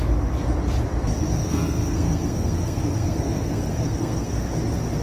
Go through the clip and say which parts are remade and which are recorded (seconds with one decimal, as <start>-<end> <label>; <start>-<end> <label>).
0.0-1.4 recorded; 1.4-4.4 remade; 4.4-5.0 recorded